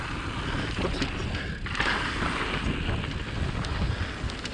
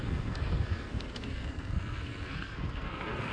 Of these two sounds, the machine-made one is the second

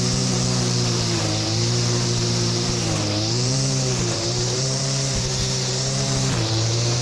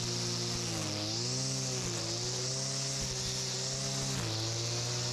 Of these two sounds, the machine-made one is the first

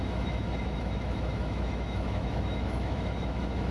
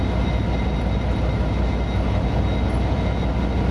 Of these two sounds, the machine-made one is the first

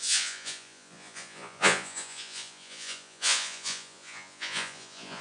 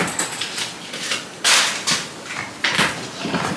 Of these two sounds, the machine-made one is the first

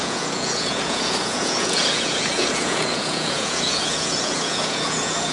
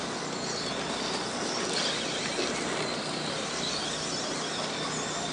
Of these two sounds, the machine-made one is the first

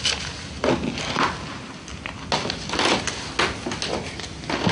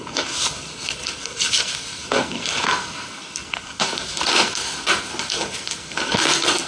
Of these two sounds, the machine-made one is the second